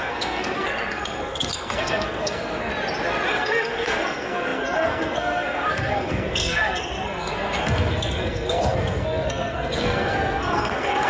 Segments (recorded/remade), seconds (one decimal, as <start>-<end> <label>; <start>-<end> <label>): 0.0-2.7 remade; 2.7-3.3 recorded; 3.3-11.1 remade